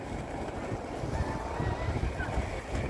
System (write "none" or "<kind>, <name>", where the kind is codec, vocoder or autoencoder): none